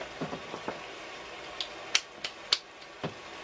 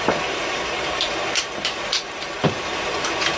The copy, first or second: second